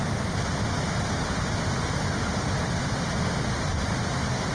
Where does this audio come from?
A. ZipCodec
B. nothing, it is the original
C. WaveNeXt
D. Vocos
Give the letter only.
B